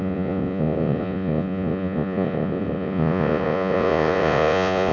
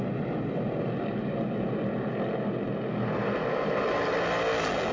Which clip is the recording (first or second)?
second